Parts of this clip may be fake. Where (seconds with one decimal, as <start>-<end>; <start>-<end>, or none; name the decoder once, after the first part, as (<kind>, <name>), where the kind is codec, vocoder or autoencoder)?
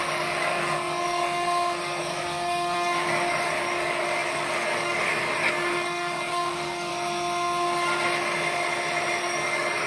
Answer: 0.0-6.9 (codec, DAC); 9.2-9.9